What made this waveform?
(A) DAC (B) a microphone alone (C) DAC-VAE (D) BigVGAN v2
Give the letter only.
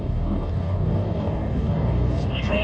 A